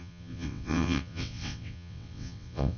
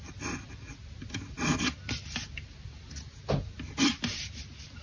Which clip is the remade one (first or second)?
first